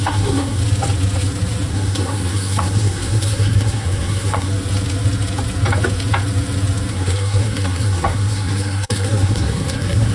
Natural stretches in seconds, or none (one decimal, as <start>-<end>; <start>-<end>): 0.6-1.7; 4.5-6.9